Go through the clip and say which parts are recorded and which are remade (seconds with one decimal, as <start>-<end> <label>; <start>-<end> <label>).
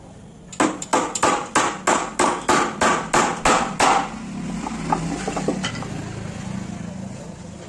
0.0-7.7 recorded